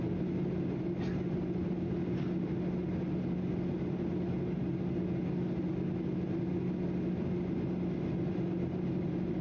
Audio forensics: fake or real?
real